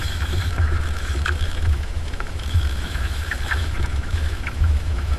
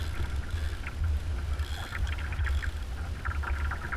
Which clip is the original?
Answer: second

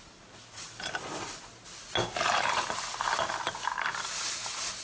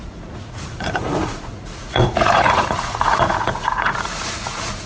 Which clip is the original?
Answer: first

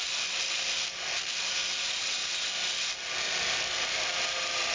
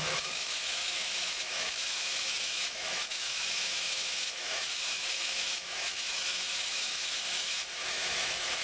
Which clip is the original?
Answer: first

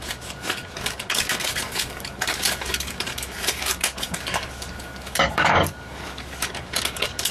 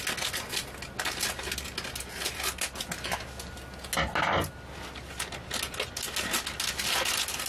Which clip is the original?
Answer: second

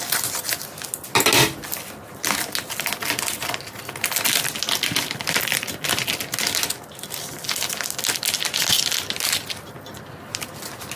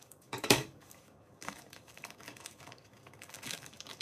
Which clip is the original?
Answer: first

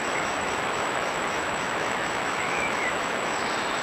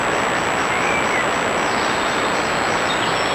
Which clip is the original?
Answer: second